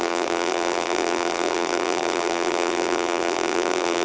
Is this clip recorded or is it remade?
remade